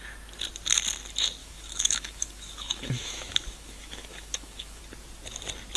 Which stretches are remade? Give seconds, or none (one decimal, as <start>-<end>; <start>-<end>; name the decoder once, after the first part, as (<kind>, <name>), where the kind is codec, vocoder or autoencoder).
1.4-4.8 (autoencoder, DAC-VAE)